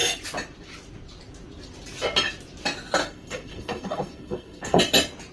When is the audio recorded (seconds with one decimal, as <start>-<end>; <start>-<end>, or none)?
0.0-3.0; 4.8-5.3